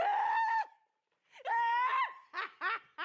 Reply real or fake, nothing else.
real